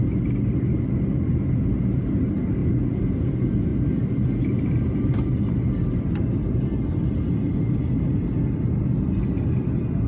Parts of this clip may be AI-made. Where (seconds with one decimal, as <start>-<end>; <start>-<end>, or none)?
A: none